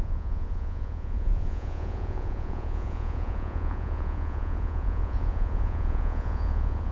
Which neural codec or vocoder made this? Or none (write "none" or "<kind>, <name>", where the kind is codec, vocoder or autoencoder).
vocoder, Vocos